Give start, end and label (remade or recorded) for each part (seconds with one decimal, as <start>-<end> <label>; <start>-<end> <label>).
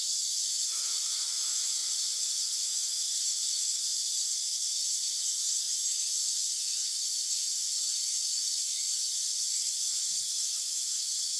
0.0-11.4 remade